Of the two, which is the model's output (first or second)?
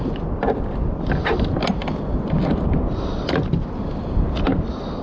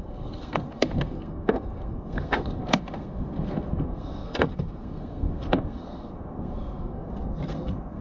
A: second